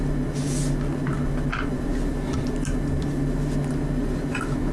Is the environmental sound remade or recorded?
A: recorded